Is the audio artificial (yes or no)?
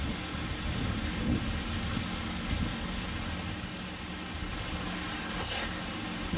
no